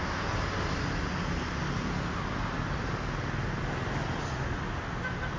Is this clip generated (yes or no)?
no